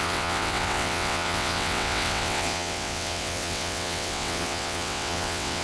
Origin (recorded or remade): remade